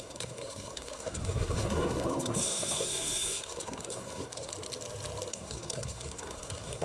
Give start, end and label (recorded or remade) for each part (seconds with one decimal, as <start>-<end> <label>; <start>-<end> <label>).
0.0-4.5 remade; 4.5-5.3 recorded; 5.3-6.8 remade